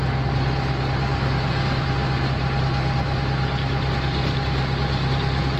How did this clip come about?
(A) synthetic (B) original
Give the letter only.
B